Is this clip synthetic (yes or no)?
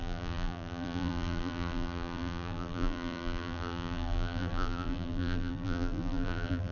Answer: yes